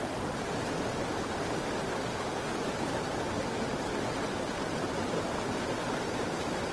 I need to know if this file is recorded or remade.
recorded